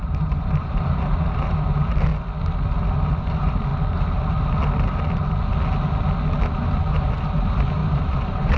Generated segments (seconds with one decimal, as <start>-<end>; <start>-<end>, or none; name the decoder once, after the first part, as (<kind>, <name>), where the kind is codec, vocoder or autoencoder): 0.0-2.1 (vocoder, BigVGAN v2); 3.2-3.7; 6.5-8.6